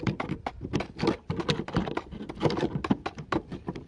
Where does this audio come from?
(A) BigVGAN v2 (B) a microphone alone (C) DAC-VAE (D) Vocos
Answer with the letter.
B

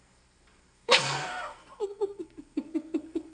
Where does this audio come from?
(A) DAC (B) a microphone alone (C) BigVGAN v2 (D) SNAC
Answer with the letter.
D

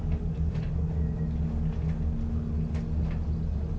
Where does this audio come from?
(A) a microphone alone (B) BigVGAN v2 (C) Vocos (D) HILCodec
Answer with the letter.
A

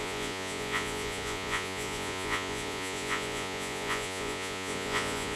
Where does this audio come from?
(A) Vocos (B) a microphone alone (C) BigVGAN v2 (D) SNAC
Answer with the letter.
A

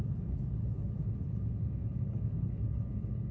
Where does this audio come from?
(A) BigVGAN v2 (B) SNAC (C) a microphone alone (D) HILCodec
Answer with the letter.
D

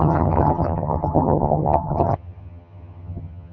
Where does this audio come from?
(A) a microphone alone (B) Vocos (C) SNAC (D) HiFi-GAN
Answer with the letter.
D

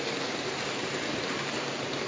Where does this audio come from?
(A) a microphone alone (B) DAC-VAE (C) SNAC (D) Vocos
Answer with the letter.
A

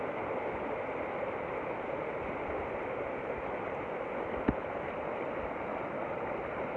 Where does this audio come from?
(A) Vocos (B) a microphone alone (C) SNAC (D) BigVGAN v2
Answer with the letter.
B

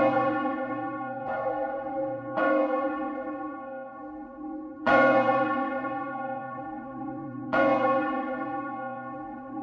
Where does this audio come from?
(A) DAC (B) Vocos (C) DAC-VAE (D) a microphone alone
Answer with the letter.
B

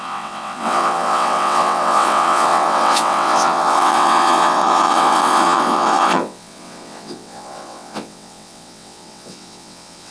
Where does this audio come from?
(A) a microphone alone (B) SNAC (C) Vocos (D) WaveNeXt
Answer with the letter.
D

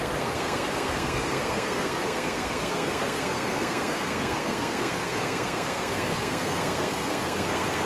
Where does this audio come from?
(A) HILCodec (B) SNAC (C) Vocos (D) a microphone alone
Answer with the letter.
B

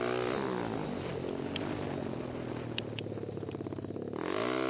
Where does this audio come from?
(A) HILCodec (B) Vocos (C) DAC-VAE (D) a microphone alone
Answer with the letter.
D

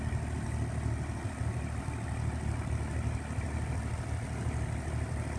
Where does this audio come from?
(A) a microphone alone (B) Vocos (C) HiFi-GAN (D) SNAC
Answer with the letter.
A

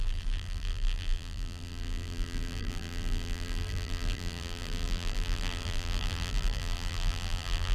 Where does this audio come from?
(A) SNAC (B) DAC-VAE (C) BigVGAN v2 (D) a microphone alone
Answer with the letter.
C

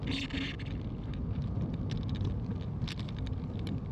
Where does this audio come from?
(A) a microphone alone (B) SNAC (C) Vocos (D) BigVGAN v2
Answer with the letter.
A